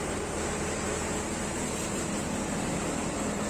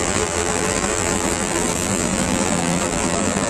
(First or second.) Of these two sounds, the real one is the first